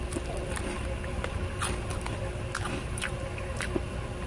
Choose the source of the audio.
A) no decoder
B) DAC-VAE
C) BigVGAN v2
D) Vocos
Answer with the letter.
A